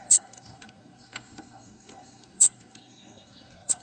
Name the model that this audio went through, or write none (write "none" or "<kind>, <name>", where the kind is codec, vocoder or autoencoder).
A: codec, SNAC